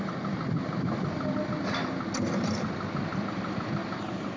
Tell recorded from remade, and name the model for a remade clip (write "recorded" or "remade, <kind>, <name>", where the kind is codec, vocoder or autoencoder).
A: recorded